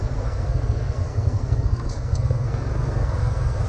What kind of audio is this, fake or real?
fake